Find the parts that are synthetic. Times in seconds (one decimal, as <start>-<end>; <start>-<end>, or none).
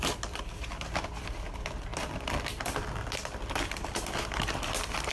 none